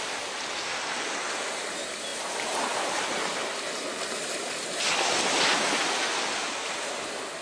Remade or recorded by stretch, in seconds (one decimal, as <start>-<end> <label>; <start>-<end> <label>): 0.0-7.4 recorded